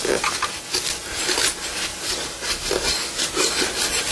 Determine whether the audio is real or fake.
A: real